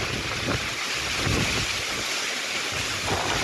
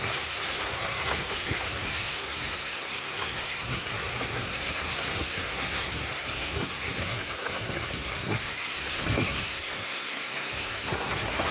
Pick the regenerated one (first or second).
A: second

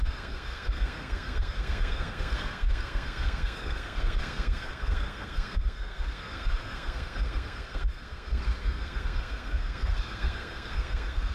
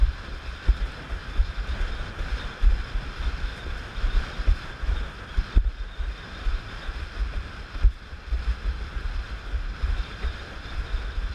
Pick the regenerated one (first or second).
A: first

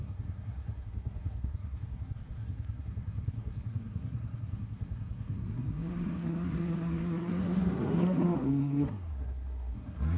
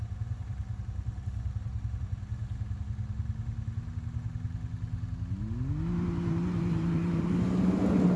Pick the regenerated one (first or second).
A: first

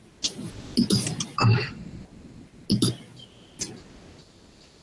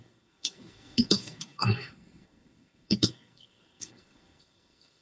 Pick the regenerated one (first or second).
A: second